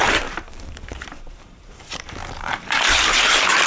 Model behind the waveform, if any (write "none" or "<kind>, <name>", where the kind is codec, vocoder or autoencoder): vocoder, BigVGAN v2